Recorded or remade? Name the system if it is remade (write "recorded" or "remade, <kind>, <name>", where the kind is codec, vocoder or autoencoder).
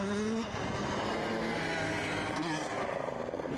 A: recorded